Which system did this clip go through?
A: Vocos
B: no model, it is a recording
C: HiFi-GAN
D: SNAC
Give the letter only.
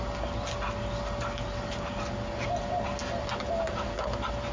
B